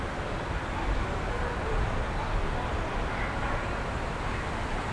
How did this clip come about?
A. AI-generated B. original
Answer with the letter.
B